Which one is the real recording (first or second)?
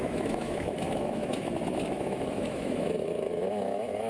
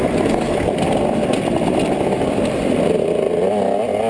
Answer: second